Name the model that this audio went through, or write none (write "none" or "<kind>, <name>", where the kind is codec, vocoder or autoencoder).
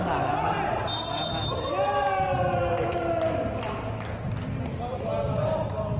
none